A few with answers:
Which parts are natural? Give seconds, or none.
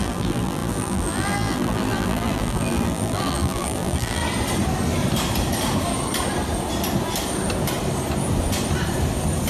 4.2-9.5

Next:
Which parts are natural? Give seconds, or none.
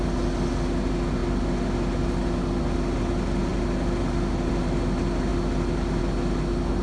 0.0-6.8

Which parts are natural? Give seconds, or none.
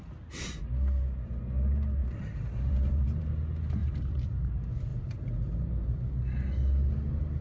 0.0-2.0; 3.2-3.8; 4.5-4.9; 6.1-7.4